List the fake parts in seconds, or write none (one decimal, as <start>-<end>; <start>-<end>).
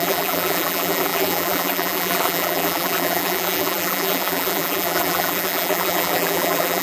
0.0-6.8